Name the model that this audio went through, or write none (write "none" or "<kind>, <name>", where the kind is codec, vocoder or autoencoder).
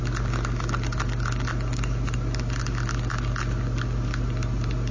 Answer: none